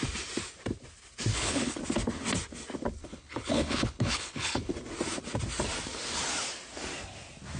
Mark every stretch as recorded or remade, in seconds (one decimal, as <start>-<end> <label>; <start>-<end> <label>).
0.0-1.3 recorded; 1.3-1.8 remade; 1.8-3.0 recorded; 3.0-4.7 remade; 4.7-7.6 recorded